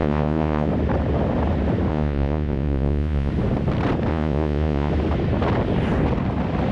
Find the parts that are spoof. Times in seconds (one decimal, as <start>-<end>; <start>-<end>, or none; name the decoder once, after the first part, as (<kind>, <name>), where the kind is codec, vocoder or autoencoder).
0.0-0.7 (vocoder, Vocos); 1.9-3.3; 4.1-4.9